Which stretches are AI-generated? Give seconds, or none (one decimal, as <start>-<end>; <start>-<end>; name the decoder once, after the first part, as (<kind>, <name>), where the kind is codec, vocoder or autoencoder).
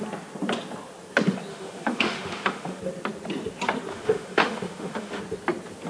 1.5-2.8 (autoencoder, DAC-VAE); 3.9-5.2